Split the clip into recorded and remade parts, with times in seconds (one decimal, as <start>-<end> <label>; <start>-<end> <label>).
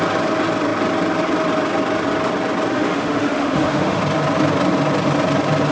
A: 0.0-2.7 recorded; 2.7-4.0 remade; 4.0-5.7 recorded